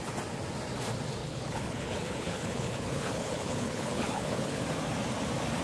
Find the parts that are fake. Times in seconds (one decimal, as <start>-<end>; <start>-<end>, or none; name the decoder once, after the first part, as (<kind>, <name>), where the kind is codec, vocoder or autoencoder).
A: 1.2-4.6 (codec, HILCodec)